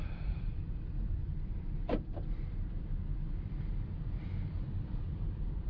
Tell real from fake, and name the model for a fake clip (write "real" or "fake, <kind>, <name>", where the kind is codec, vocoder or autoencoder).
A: fake, vocoder, BigVGAN v2